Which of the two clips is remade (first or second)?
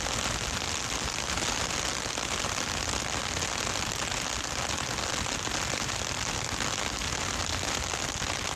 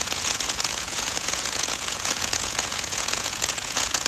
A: second